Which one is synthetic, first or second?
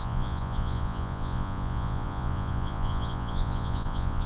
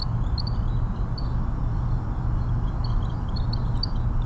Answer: first